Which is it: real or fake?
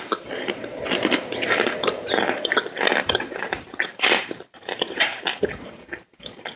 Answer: fake